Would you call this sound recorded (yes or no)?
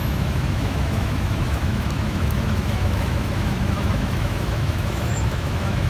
no